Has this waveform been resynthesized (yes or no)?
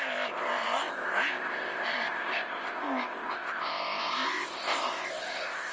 yes